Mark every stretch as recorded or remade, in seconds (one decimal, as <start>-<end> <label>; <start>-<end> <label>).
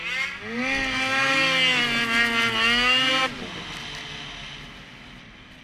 0.0-5.6 recorded